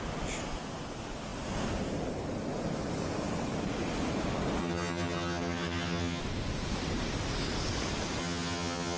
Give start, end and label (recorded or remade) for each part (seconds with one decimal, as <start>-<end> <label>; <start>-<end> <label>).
0.0-4.6 recorded; 4.6-6.2 remade; 6.2-8.2 recorded; 8.2-9.0 remade

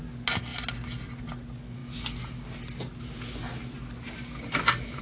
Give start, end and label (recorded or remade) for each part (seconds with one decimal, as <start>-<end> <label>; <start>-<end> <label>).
0.0-5.0 recorded

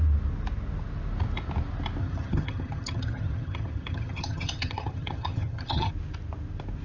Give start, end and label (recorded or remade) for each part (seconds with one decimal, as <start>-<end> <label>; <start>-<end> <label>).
0.0-2.0 recorded; 2.0-5.9 remade; 5.9-6.8 recorded

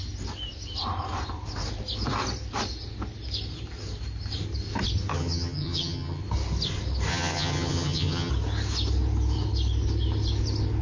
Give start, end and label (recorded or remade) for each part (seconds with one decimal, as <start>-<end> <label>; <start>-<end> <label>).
0.0-5.1 recorded; 5.1-6.2 remade; 6.2-7.1 recorded; 7.1-8.3 remade; 8.3-10.8 recorded

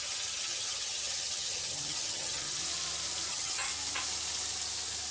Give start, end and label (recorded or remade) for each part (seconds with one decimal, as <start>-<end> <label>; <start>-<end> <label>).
0.0-2.6 remade; 2.6-3.3 recorded; 3.3-3.7 remade; 3.7-5.1 recorded